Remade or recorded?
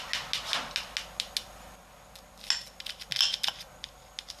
recorded